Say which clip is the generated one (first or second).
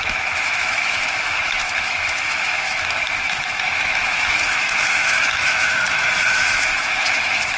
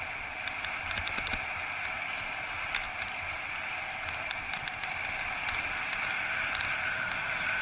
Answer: first